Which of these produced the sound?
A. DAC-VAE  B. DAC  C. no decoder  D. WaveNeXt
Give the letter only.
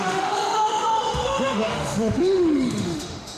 A